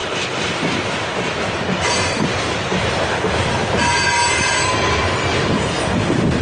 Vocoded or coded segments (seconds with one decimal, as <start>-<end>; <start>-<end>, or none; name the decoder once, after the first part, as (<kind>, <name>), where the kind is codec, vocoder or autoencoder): none